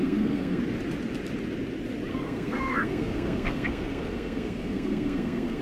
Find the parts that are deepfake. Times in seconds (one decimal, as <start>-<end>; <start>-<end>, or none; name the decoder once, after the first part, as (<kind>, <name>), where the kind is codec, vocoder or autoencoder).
0.0-0.6 (codec, SNAC); 2.1-5.6